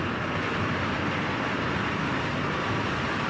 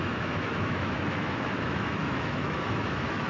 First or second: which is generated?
second